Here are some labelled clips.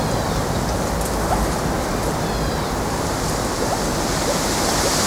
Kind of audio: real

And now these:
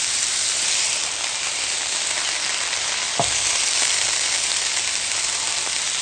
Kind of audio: real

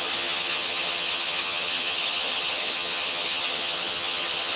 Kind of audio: fake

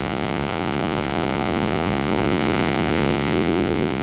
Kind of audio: fake